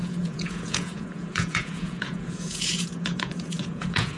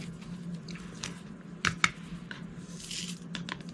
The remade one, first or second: first